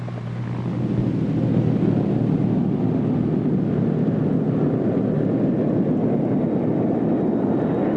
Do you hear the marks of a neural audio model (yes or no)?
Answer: no